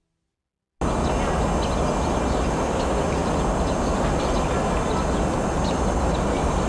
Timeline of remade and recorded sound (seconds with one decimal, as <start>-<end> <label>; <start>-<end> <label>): 0.0-6.7 recorded